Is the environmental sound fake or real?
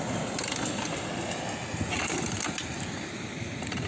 real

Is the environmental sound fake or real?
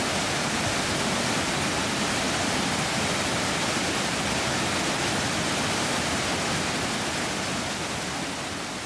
real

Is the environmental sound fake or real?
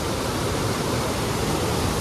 real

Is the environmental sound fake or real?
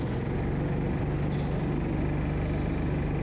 real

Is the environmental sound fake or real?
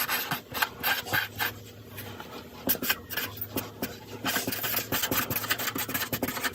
real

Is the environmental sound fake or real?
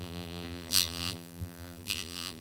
fake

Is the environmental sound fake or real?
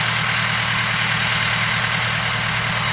real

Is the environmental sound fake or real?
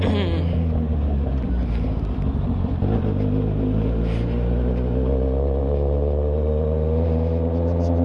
real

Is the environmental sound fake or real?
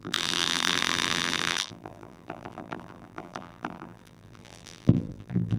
fake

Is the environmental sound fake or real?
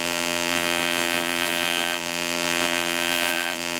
fake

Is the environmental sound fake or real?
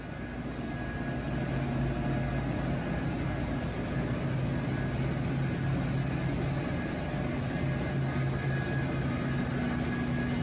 real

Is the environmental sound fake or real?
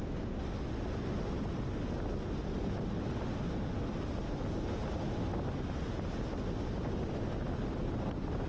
real